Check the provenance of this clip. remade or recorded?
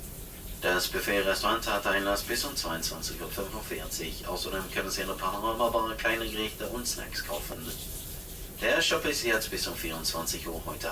recorded